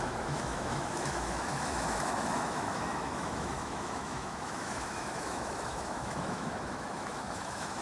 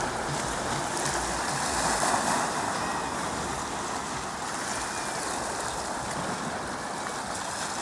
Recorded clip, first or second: second